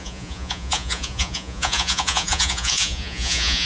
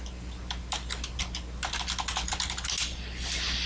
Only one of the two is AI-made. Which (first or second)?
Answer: first